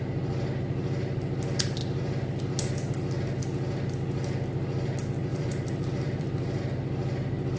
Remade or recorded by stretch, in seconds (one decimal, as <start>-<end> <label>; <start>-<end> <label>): 0.0-5.3 recorded; 5.3-6.6 remade; 6.6-7.6 recorded